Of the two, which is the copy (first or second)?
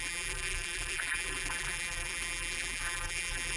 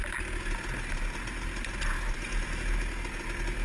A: first